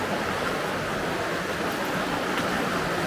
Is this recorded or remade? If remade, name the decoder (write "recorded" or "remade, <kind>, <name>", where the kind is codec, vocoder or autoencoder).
recorded